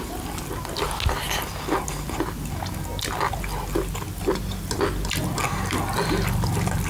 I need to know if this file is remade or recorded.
recorded